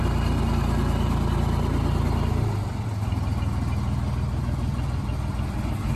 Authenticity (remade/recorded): recorded